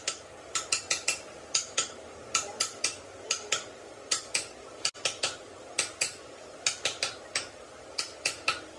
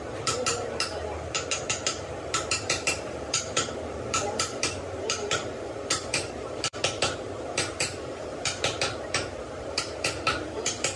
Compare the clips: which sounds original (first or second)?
first